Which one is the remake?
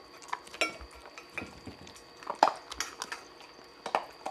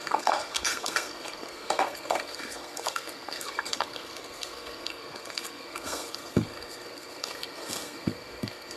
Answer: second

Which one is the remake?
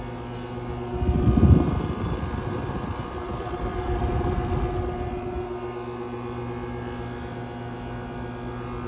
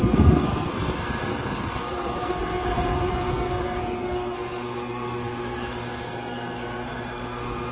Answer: second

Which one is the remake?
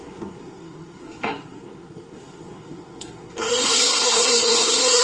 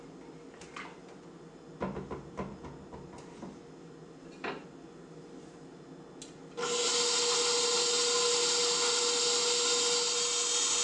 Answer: first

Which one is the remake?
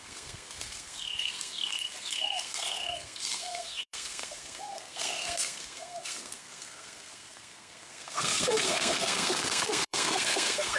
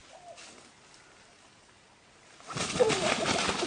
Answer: first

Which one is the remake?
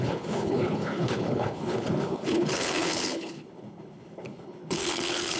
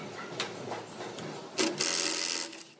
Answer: first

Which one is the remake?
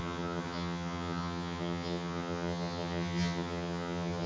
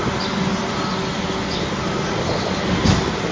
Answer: first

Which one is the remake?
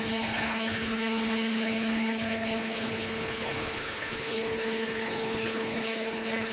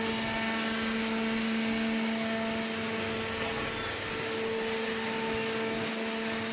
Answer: first